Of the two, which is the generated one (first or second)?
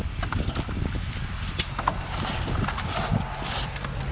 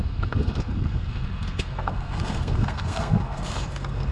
second